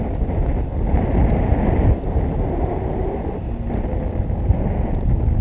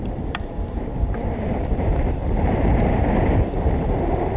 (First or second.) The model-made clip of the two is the second